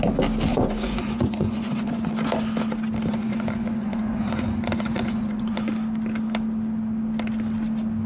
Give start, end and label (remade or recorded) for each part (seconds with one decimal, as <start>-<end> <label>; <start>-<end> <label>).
0.0-0.5 recorded; 0.5-2.1 remade; 2.1-3.1 recorded; 3.1-5.7 remade; 5.7-8.1 recorded